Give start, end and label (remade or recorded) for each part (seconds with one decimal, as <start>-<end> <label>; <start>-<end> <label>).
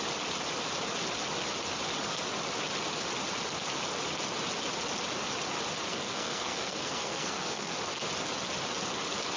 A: 0.0-5.9 recorded; 5.9-7.7 remade; 7.7-9.4 recorded